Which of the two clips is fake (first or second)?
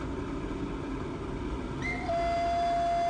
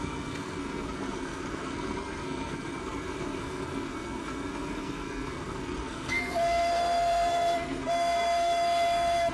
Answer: second